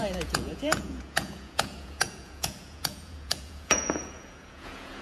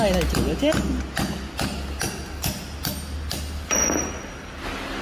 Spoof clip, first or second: first